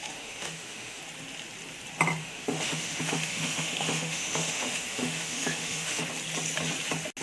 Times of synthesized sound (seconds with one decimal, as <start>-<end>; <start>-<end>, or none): 0.0-1.0; 2.2-6.0